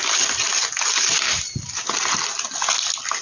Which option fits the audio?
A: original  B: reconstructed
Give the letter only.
A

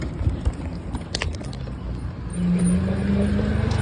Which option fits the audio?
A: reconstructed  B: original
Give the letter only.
B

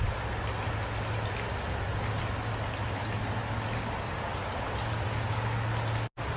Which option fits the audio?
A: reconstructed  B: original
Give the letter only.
B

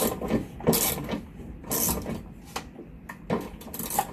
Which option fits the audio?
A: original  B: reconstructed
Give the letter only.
A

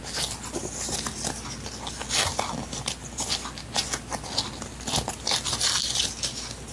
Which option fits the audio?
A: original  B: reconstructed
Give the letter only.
A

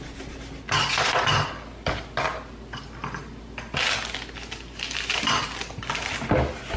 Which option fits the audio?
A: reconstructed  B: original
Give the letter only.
B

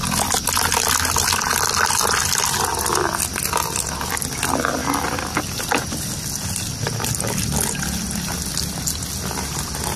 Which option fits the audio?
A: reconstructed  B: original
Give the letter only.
B